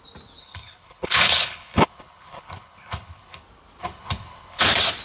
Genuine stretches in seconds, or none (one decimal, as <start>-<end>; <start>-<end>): 0.0-0.4; 3.4-3.8; 4.6-5.0